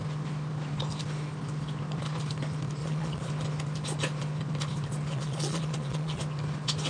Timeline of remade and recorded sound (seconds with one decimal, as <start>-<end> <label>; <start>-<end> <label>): 0.0-2.8 recorded; 2.8-3.3 remade; 3.3-5.1 recorded; 5.1-6.2 remade; 6.2-6.9 recorded